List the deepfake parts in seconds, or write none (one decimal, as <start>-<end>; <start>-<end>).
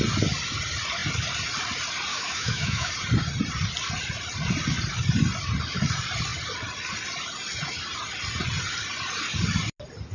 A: 2.1-2.9